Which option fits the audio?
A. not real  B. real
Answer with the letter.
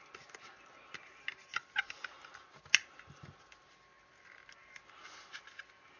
B